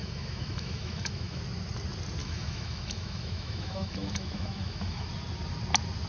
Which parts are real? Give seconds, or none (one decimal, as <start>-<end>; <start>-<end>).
1.4-2.2; 5.1-6.1